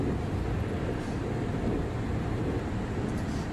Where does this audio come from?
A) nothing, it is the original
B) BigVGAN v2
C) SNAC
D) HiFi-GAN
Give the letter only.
A